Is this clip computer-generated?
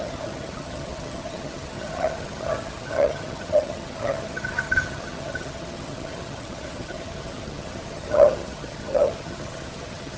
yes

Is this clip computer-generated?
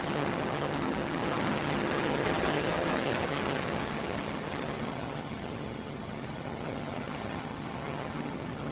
yes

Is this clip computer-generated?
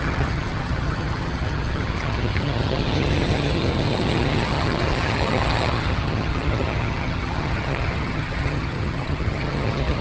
yes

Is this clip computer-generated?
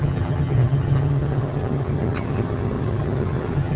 yes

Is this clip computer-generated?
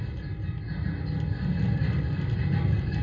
no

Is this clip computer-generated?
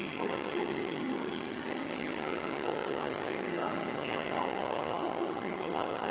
yes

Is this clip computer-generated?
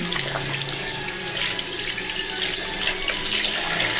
no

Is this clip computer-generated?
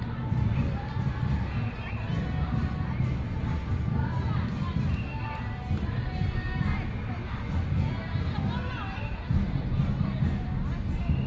no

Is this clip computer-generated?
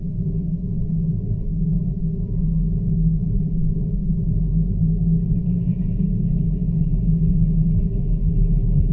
no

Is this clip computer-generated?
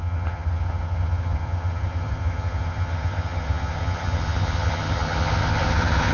yes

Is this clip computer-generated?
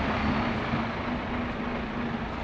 no